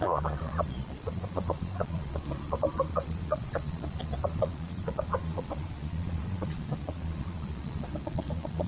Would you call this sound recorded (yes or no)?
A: no